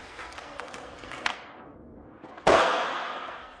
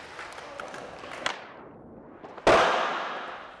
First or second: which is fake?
first